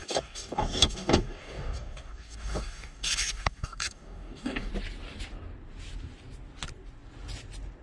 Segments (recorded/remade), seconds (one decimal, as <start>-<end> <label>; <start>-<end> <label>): 0.0-4.7 remade; 4.7-7.8 recorded